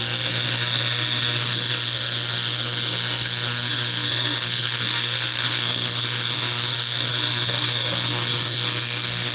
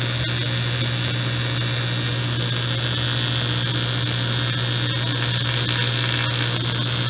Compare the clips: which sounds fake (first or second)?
first